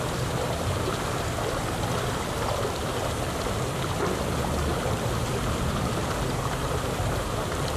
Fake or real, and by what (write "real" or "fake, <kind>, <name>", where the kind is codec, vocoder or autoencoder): real